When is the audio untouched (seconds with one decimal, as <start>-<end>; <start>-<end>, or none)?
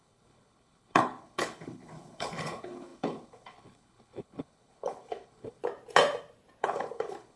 5.6-6.6